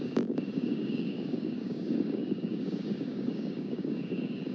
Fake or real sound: fake